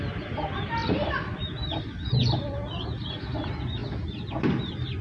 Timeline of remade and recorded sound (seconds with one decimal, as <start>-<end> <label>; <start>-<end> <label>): 0.0-5.0 recorded